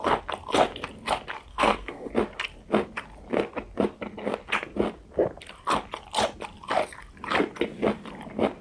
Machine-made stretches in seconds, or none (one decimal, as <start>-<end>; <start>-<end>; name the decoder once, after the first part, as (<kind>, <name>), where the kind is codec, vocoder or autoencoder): 1.5-2.1 (codec, SNAC)